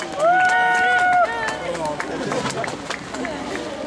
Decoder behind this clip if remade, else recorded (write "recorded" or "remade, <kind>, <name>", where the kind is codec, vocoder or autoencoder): recorded